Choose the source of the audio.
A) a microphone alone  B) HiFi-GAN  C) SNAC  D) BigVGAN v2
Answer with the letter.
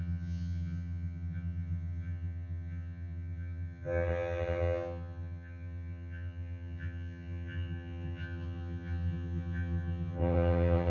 B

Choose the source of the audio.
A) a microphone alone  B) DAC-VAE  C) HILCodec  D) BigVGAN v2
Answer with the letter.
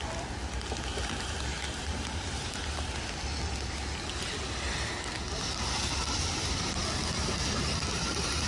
A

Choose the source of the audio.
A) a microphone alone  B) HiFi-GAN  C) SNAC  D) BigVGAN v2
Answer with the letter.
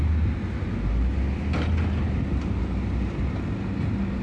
A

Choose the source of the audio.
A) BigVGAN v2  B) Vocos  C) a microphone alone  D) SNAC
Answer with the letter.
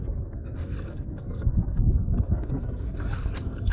D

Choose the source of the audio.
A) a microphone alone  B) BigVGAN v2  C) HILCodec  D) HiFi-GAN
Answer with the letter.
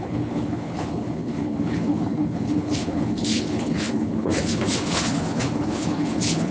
C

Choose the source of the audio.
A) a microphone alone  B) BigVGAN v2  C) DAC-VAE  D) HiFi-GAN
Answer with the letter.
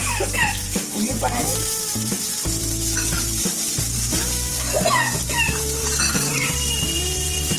B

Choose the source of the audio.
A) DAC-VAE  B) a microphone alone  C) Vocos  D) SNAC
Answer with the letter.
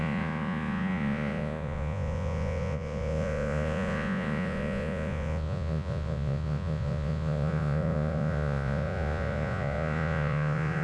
C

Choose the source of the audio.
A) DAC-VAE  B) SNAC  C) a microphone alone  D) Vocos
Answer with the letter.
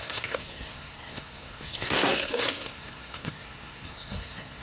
B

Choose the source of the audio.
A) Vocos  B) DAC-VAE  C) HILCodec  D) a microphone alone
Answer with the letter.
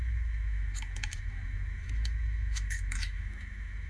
B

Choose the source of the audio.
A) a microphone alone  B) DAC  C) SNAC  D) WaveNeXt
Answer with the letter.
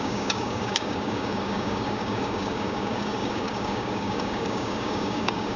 B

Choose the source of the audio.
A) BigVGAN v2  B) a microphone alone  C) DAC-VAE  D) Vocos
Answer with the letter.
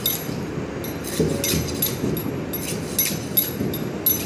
B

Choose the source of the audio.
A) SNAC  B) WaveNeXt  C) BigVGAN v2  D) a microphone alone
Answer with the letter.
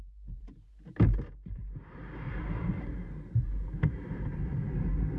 C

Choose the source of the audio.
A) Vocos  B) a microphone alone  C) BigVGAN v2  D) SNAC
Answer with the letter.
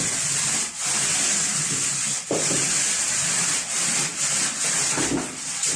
B